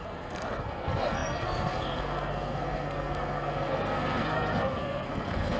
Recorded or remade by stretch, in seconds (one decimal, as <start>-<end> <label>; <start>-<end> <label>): 0.0-5.6 remade